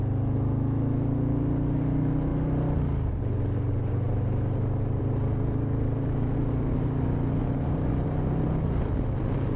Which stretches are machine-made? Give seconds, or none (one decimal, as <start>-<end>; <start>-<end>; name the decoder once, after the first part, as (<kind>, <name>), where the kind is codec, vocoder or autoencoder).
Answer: 7.4-7.9 (vocoder, BigVGAN v2)